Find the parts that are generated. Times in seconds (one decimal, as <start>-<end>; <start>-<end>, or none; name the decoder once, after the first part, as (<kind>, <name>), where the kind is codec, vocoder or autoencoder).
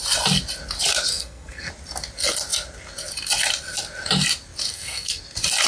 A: 1.1-1.7 (codec, SNAC); 4.7-5.2